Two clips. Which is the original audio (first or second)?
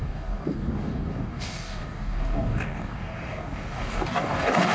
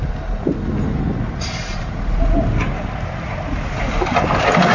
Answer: second